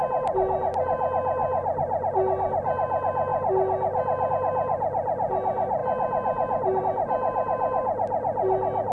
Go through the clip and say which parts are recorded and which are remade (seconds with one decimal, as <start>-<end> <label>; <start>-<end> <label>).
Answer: 0.0-8.9 recorded